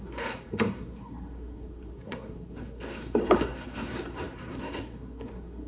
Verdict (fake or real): fake